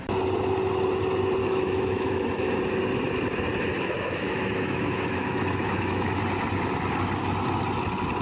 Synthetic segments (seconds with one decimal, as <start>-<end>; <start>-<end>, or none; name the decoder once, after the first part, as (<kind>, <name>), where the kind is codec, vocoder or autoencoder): 1.4-2.6 (autoencoder, DAC-VAE); 3.7-6.2